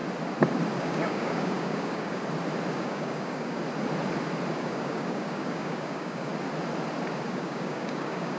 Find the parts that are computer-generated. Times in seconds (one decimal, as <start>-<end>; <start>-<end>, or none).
0.8-2.2; 2.7-3.6; 4.5-6.3; 7.3-8.4